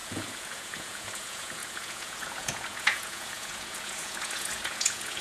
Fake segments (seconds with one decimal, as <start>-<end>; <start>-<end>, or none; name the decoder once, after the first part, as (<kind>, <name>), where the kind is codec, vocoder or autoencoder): 0.0-5.2 (vocoder, Vocos)